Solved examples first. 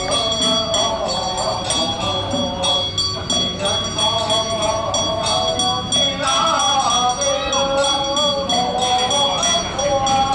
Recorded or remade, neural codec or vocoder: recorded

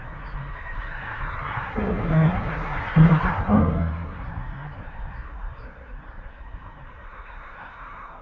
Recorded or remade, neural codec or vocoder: remade, codec, SNAC